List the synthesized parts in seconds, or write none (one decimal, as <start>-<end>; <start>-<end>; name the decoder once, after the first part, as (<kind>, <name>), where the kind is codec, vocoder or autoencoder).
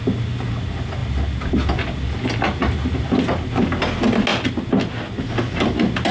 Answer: none